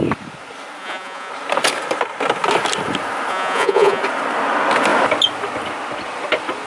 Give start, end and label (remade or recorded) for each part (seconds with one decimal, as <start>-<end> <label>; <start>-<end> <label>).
0.0-0.8 recorded; 0.8-1.3 remade; 1.3-3.3 recorded; 3.3-4.0 remade; 4.0-6.7 recorded